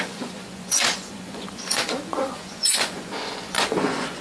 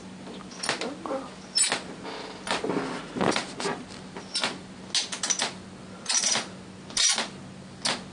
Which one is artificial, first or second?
first